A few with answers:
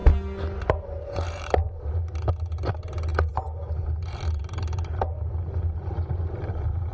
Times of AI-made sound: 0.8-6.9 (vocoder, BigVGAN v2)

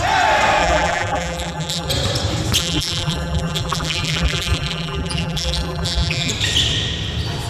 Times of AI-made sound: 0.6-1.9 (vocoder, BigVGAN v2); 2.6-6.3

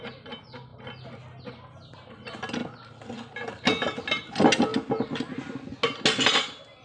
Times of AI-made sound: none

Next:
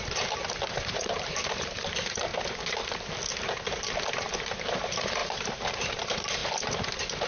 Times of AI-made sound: 0.0-2.3 (vocoder, BigVGAN v2); 4.2-6.4